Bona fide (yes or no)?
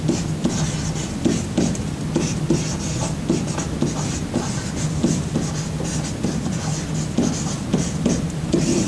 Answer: yes